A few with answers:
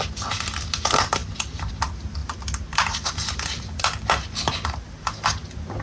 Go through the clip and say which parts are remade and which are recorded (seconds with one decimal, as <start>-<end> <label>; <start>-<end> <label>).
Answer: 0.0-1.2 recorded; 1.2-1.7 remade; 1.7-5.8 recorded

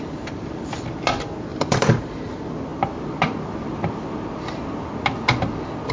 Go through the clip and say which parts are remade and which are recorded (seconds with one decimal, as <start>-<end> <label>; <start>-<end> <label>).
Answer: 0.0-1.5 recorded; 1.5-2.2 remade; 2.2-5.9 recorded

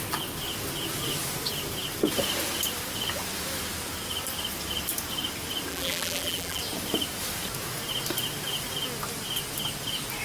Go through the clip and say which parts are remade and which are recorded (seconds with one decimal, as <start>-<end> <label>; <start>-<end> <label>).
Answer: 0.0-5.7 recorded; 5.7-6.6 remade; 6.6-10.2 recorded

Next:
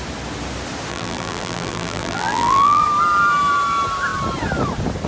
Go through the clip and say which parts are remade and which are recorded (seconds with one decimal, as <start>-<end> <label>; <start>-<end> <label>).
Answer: 0.0-0.9 recorded; 0.9-2.8 remade; 2.8-5.1 recorded

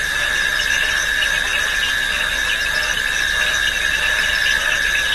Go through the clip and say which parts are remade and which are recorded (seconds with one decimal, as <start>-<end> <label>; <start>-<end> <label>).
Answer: 0.0-5.1 recorded